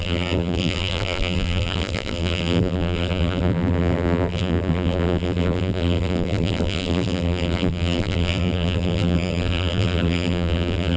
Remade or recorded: remade